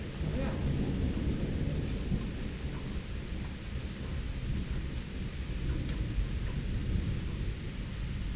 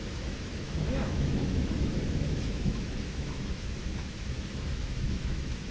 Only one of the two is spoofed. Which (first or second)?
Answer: second